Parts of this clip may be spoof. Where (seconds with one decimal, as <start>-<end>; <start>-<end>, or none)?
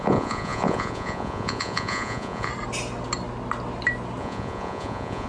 0.0-2.5; 4.2-5.3